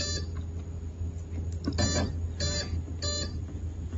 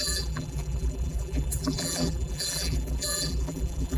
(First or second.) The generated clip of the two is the second